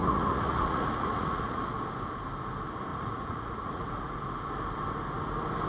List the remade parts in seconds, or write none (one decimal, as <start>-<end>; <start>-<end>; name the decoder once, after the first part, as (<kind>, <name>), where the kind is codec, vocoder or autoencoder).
0.0-1.6 (vocoder, Vocos); 2.9-4.2